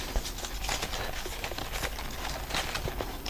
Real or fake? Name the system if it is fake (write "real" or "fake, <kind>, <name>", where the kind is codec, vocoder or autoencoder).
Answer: real